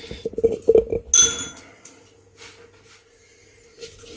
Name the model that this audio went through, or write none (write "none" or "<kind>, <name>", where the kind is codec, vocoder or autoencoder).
none